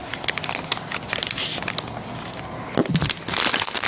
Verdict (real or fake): real